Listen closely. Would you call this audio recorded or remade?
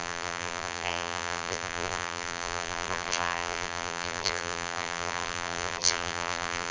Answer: remade